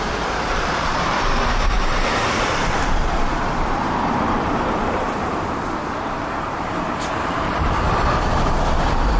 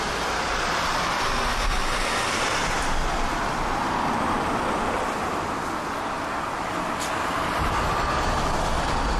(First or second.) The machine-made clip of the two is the first